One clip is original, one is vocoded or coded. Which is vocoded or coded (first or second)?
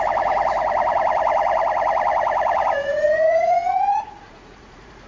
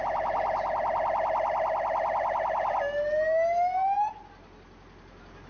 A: first